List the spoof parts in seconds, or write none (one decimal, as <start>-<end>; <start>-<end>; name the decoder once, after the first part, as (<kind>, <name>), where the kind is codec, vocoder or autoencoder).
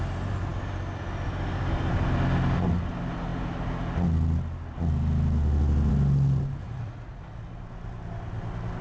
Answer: 6.6-7.2 (vocoder, Vocos)